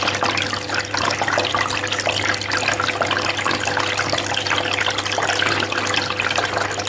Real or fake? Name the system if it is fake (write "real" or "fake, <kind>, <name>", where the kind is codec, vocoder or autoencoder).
real